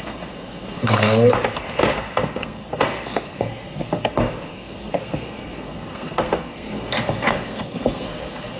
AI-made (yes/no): yes